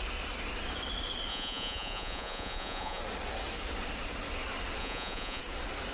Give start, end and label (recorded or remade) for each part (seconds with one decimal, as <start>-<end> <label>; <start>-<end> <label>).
0.0-1.3 recorded; 1.3-3.0 remade; 3.0-4.8 recorded; 4.8-5.4 remade; 5.4-5.9 recorded

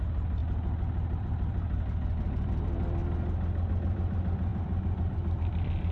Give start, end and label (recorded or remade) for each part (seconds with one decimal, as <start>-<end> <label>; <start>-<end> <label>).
0.0-0.4 remade; 0.4-1.2 recorded; 1.2-3.0 remade; 3.0-3.7 recorded; 3.7-5.9 remade

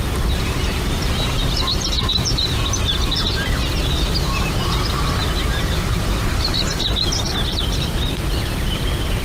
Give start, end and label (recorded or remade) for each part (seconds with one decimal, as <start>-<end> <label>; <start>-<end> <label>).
0.0-5.2 remade; 5.2-8.2 recorded; 8.2-9.2 remade

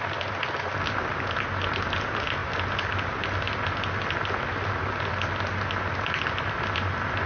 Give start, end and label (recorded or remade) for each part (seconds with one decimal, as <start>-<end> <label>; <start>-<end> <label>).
0.0-7.3 recorded

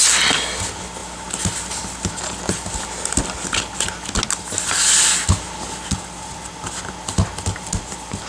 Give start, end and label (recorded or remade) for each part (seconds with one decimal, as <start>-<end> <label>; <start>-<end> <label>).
0.0-8.3 recorded

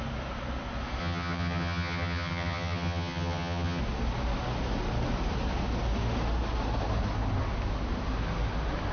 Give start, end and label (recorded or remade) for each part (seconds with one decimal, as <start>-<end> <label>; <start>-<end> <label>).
0.0-1.0 recorded; 1.0-3.8 remade; 3.8-8.9 recorded